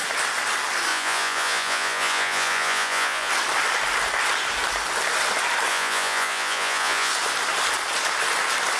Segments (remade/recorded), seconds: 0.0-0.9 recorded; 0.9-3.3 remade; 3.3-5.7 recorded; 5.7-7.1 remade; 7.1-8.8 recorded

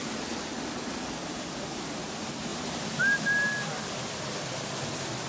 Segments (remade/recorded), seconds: 0.0-2.5 recorded; 2.5-3.0 remade; 3.0-5.3 recorded

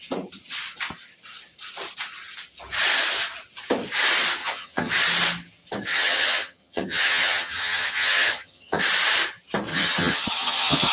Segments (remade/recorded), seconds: 0.0-4.4 recorded; 4.4-4.9 remade; 4.9-5.9 recorded; 5.9-8.8 remade; 8.8-9.7 recorded; 9.7-10.9 remade

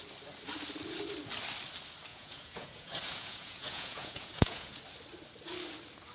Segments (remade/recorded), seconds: 0.0-2.1 recorded; 2.1-4.8 remade; 4.8-6.1 recorded

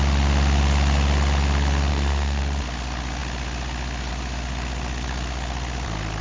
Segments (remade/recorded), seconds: 0.0-1.9 recorded; 1.9-2.4 remade; 2.4-6.2 recorded

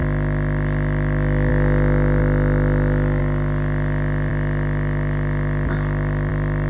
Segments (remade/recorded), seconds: 0.0-6.7 recorded